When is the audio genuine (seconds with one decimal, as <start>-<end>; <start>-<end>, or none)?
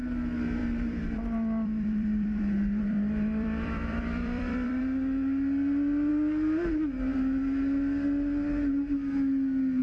0.0-0.6; 4.8-9.8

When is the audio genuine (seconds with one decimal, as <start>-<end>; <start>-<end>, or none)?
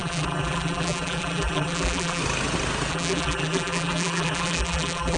2.2-2.9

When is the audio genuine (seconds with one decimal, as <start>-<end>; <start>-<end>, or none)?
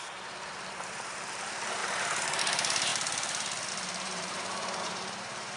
2.9-3.7